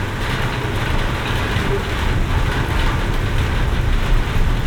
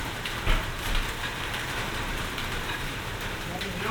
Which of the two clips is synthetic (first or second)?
second